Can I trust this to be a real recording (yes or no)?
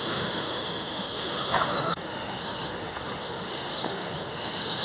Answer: no